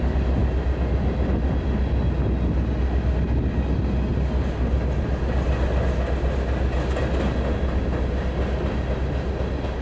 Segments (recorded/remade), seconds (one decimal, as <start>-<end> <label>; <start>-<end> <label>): 0.0-9.8 recorded